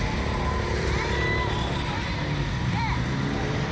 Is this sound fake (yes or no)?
no